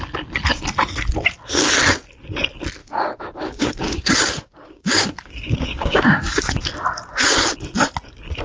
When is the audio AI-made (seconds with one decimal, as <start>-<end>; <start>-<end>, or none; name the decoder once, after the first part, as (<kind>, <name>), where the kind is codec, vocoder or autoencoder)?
2.8-6.4 (codec, DAC)